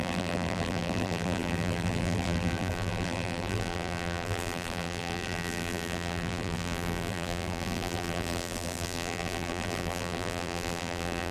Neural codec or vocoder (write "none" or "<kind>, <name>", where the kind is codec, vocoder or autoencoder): vocoder, BigVGAN v2